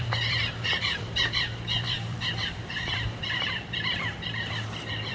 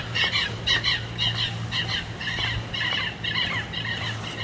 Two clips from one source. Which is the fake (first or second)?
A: first